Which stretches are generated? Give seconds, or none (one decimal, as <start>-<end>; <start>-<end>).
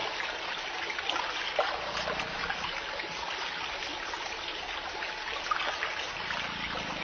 none